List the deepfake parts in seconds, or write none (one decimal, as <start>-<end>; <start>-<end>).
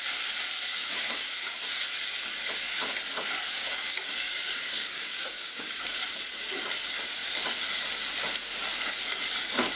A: 0.7-1.7; 3.5-6.0